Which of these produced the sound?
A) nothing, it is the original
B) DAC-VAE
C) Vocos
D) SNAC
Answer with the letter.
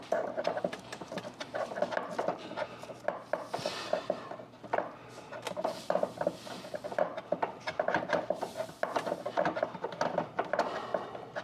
A